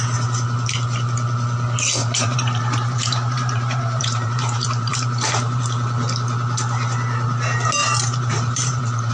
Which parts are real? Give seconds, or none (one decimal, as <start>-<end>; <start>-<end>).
0.0-2.0; 5.6-7.8